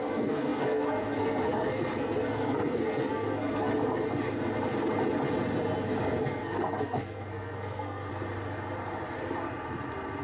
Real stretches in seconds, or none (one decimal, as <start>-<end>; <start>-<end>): 3.7-6.2; 8.1-10.2